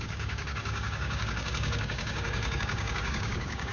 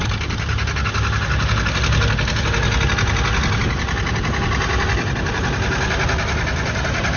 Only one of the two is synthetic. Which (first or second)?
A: first